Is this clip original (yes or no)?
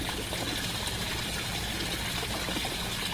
yes